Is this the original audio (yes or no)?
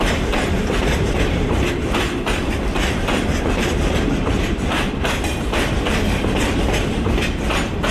no